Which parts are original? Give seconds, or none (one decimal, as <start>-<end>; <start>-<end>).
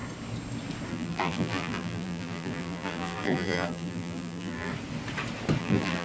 0.0-0.9; 4.7-5.6